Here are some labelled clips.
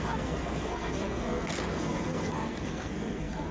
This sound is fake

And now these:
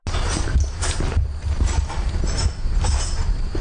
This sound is real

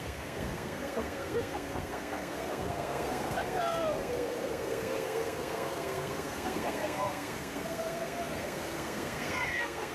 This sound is fake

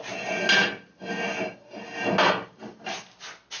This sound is real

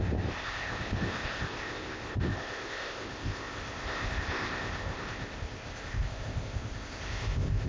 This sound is fake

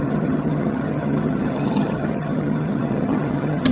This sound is fake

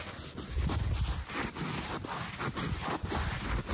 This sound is real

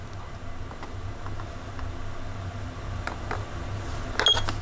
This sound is real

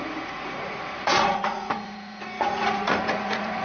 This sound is fake